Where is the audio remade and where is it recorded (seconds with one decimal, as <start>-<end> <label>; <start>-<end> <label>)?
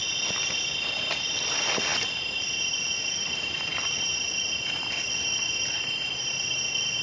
0.0-7.0 recorded